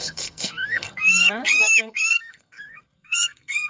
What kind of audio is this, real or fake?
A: fake